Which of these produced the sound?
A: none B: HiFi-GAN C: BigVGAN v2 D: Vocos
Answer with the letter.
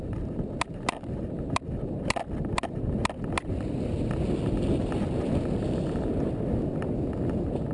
A